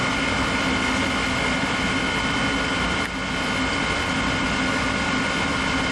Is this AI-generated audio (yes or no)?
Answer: no